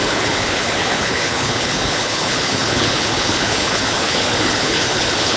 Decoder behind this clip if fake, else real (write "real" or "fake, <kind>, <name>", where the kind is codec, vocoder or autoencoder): fake, codec, HILCodec